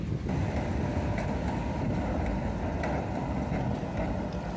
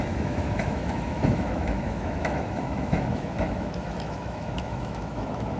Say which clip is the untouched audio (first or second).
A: first